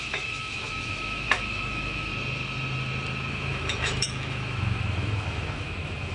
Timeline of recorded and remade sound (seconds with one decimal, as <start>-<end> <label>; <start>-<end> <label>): 0.0-2.1 remade; 2.1-3.3 recorded; 3.3-6.1 remade